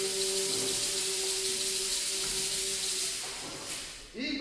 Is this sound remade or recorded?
recorded